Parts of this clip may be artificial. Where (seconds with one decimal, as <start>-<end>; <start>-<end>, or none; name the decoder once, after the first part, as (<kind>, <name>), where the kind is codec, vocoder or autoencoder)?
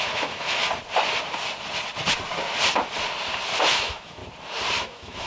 0.0-0.6 (autoencoder, DAC-VAE); 3.7-4.2; 4.8-5.3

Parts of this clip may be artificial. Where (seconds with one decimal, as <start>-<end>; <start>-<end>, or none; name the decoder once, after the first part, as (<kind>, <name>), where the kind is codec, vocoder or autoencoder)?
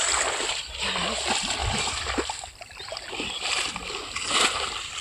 0.0-0.6 (vocoder, BigVGAN v2); 1.6-4.2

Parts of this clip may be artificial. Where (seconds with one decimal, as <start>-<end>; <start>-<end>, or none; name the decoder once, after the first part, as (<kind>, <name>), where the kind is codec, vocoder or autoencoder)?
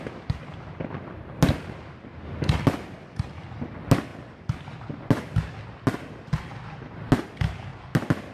none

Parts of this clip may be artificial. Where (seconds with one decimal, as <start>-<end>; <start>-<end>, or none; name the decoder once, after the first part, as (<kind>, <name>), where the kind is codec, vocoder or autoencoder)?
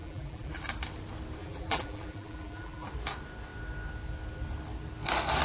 0.0-0.6 (vocoder, BigVGAN v2); 1.4-2.9